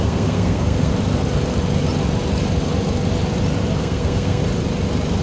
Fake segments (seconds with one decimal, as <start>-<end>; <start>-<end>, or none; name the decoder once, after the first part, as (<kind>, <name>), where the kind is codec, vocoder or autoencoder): 0.0-0.9 (codec, SNAC); 3.8-4.4